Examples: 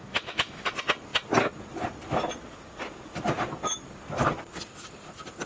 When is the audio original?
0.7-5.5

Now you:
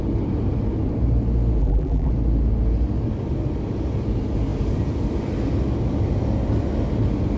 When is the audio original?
0.0-1.6; 2.1-7.4

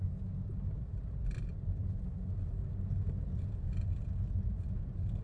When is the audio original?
0.0-5.2